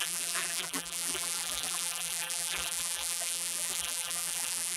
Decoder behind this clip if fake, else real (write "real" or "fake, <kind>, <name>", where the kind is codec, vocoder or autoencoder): fake, vocoder, BigVGAN v2